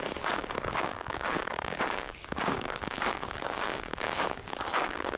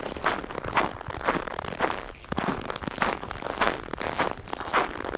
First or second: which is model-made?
first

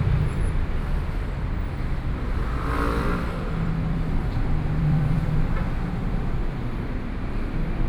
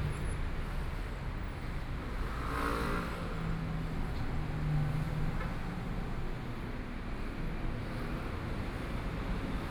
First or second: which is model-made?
first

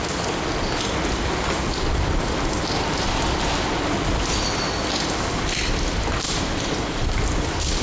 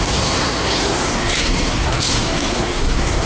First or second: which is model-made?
second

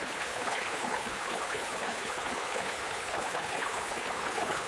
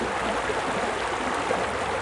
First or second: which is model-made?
first